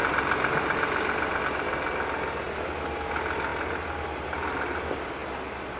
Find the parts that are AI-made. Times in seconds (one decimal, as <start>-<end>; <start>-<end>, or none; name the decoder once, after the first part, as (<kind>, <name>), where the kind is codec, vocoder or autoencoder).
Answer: none